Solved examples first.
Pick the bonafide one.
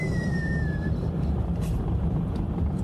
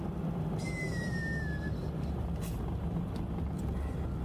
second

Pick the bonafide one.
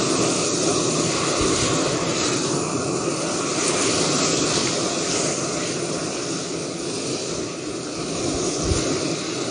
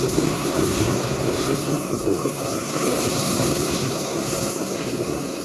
first